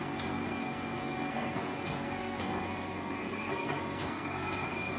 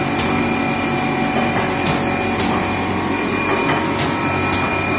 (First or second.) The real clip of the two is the second